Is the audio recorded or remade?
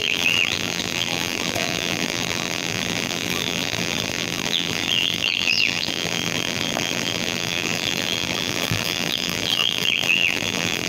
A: remade